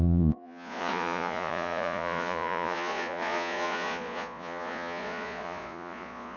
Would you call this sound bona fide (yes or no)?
no